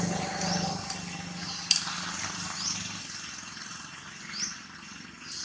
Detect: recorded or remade recorded